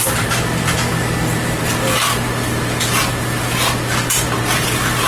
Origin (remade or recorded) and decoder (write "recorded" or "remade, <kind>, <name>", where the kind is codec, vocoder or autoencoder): recorded